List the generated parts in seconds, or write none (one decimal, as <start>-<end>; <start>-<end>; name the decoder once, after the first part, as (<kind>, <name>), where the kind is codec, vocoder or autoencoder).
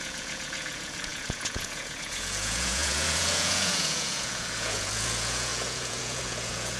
0.0-6.8 (vocoder, Vocos)